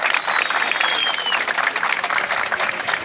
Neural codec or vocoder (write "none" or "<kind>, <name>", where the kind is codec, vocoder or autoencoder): none